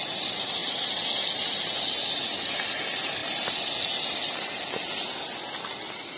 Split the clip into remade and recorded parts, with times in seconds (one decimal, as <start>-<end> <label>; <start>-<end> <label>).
0.0-6.2 recorded